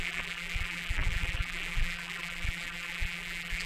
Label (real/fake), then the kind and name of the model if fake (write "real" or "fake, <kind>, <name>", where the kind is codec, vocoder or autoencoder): fake, vocoder, BigVGAN v2